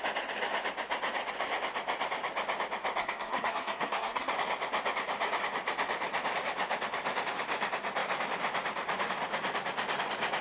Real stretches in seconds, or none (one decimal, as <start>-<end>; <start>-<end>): 0.0-3.0; 4.3-10.4